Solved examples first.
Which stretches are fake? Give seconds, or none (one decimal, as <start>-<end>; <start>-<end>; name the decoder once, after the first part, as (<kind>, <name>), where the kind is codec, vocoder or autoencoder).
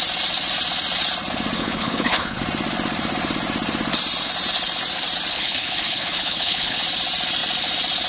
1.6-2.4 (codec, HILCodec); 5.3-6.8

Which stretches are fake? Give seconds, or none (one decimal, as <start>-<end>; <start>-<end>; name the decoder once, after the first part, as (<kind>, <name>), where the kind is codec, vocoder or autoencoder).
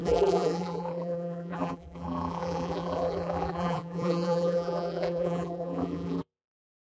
0.0-6.9 (vocoder, BigVGAN v2)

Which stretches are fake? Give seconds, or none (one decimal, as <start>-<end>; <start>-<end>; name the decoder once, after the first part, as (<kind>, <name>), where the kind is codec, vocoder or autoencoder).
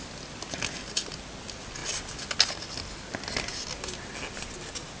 none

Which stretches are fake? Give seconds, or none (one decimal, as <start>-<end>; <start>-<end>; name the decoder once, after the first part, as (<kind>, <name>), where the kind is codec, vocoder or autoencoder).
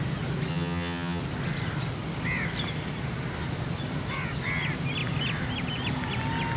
0.5-1.2 (vocoder, HiFi-GAN)